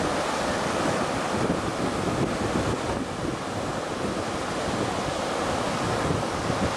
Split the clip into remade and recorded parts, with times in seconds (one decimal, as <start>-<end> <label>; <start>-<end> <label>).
0.0-6.8 recorded